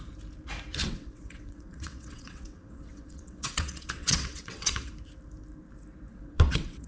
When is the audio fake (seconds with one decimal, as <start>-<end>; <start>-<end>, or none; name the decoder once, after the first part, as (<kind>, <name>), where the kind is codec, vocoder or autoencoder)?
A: 0.8-4.9 (vocoder, WaveNeXt); 6.1-6.9